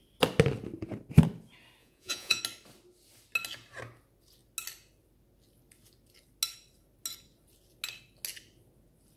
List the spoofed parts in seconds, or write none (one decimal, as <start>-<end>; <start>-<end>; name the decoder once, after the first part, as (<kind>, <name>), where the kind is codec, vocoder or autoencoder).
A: 1.8-2.4 (vocoder, Vocos)